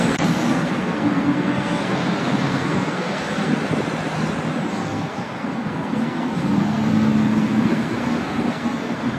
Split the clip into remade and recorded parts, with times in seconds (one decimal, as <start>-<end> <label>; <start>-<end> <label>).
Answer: 0.0-3.5 remade; 3.5-4.7 recorded; 4.7-9.2 remade